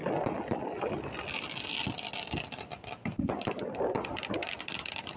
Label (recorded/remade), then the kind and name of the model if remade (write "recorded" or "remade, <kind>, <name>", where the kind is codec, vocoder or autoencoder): recorded